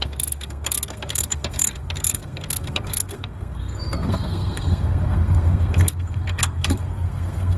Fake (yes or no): yes